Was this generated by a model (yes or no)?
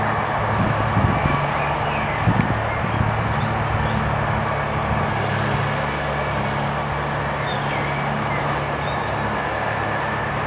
no